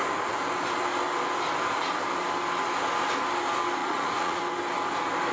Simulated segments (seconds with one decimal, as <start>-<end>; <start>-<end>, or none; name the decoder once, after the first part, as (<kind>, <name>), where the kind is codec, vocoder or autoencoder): 3.8-4.4 (vocoder, Vocos)